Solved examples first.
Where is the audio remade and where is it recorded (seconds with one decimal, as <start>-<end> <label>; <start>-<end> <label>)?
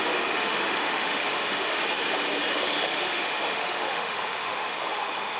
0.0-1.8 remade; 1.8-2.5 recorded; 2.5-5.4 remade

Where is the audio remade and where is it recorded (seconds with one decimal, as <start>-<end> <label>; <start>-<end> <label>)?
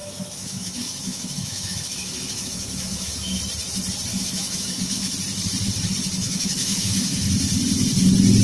0.0-3.4 remade; 3.4-4.1 recorded; 4.1-5.1 remade; 5.1-6.2 recorded; 6.2-7.3 remade; 7.3-8.4 recorded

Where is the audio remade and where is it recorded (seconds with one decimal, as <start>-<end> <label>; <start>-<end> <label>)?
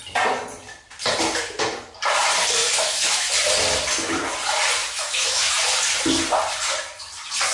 0.0-2.6 recorded; 2.6-3.3 remade; 3.3-4.8 recorded; 4.8-5.5 remade; 5.5-7.5 recorded